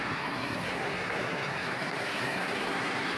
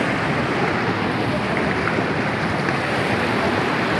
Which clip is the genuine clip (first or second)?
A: second